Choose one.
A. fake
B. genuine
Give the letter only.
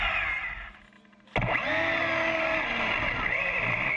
B